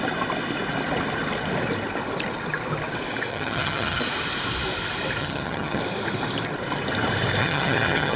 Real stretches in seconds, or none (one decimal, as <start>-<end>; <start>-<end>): 0.0-3.3; 4.0-5.2; 5.8-7.4